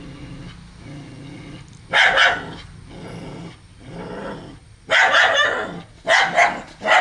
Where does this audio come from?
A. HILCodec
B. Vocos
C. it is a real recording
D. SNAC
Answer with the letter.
C